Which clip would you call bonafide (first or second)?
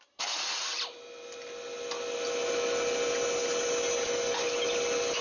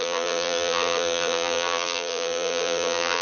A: first